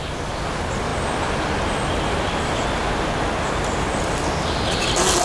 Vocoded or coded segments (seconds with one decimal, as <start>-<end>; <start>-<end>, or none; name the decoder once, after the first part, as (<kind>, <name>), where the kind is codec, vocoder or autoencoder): none